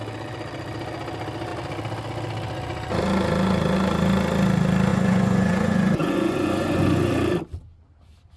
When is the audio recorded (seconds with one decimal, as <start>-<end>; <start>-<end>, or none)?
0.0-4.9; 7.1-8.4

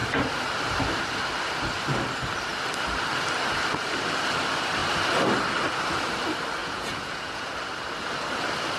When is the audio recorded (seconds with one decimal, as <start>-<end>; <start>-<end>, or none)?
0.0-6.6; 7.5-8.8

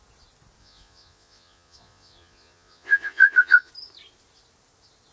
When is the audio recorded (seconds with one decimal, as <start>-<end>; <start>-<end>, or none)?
0.0-0.6; 3.7-5.1

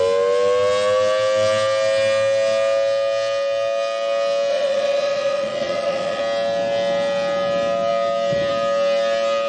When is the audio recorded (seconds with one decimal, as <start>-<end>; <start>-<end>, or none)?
0.0-4.5; 6.2-9.5